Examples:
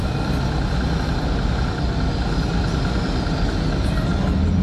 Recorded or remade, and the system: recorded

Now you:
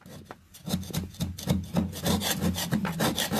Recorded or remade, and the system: recorded